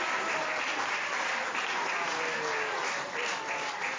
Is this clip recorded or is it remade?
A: recorded